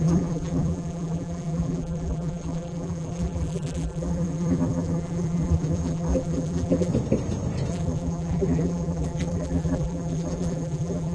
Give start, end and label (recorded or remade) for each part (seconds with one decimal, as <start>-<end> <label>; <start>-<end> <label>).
0.0-6.9 remade; 6.9-7.7 recorded; 7.7-11.1 remade